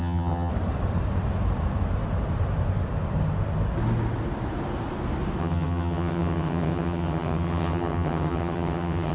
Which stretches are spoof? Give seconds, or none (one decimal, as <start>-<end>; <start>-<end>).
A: 0.0-0.5; 5.4-9.1